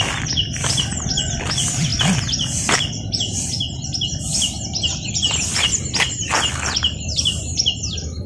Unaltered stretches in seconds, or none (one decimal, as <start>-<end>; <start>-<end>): 0.0-8.3